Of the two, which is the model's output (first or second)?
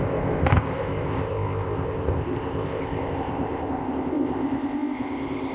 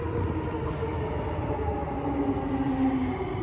first